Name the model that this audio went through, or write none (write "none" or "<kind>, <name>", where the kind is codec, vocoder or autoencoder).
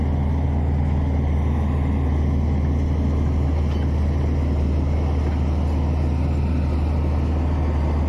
none